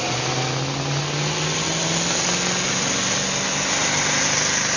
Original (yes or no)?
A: yes